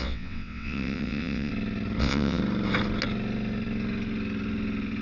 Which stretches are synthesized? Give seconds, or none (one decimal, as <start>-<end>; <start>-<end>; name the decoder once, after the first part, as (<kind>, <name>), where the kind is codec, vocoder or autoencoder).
0.0-1.5 (vocoder, WaveNeXt); 2.0-2.4